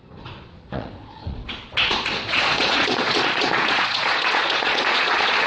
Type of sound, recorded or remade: remade